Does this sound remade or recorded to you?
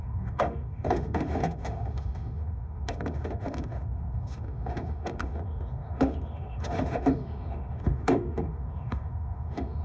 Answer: remade